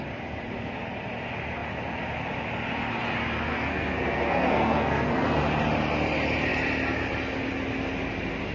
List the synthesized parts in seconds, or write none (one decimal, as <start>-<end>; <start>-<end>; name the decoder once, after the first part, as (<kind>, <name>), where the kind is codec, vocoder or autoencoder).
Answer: 3.5-5.4 (codec, SNAC)